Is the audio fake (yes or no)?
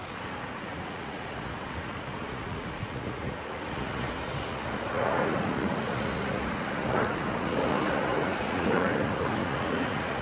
yes